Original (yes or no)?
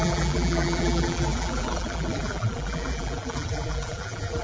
no